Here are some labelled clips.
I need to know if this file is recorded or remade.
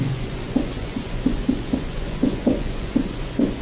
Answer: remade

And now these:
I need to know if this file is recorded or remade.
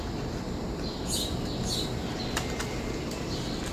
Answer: recorded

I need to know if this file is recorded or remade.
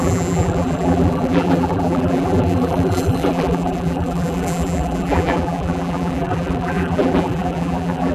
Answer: remade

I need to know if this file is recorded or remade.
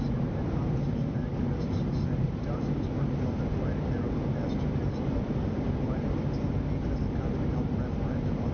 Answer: recorded